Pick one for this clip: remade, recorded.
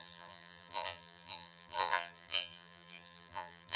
remade